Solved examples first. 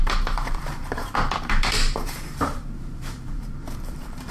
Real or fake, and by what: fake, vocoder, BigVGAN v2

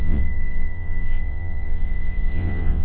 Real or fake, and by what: fake, vocoder, WaveNeXt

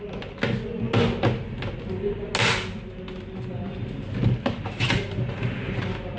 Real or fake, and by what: real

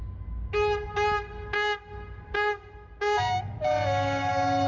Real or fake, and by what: real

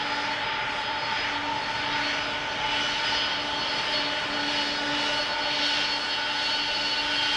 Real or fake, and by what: real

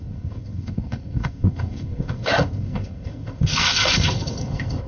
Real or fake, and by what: fake, codec, SNAC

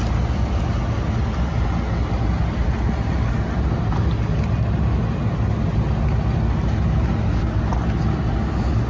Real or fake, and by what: real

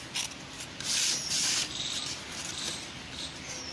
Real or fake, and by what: real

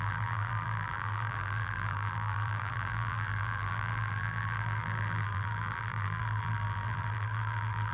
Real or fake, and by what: fake, vocoder, BigVGAN v2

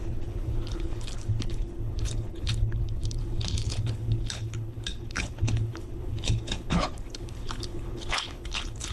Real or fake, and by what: fake, codec, HILCodec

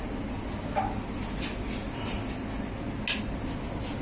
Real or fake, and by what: real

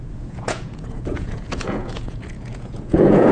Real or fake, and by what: fake, vocoder, Vocos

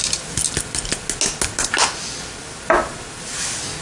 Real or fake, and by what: real